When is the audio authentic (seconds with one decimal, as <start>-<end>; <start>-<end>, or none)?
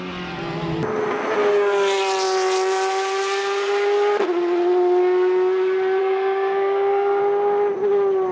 0.0-6.0; 7.2-8.3